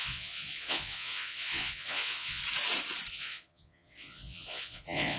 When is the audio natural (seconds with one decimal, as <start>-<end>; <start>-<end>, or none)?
2.4-3.1